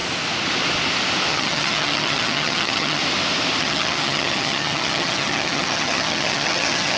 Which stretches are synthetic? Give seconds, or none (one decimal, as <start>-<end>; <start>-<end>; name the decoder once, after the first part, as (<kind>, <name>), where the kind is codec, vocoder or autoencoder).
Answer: 1.3-3.0 (vocoder, HiFi-GAN); 3.6-7.0